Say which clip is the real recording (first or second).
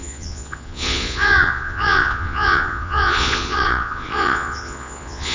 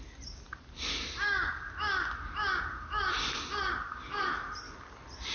second